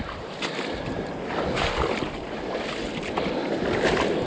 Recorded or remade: recorded